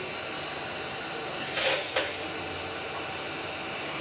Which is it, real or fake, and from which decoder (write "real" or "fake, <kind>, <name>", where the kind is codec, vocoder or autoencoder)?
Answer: real